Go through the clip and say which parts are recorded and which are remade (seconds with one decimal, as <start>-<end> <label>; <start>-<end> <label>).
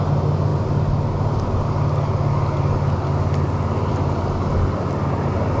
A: 0.0-5.6 recorded